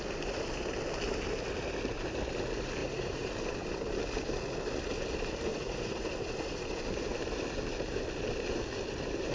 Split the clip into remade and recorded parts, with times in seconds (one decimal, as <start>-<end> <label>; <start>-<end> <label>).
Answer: 0.0-2.8 recorded; 2.8-3.3 remade; 3.3-5.5 recorded; 5.5-6.8 remade; 6.8-9.3 recorded